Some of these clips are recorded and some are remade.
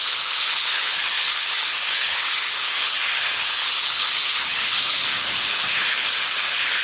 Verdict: remade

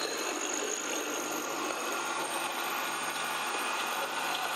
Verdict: recorded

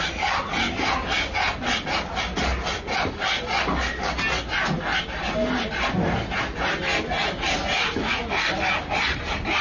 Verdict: recorded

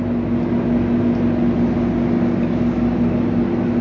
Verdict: recorded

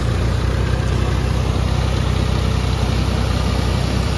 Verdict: recorded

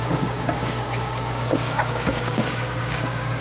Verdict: remade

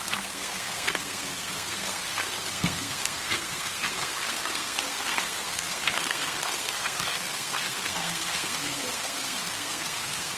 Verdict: remade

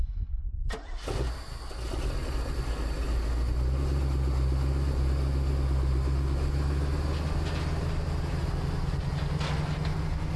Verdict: recorded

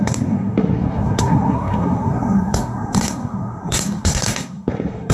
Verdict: remade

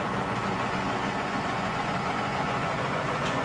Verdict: remade